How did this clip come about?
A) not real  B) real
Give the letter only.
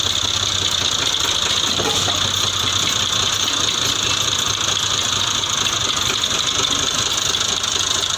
B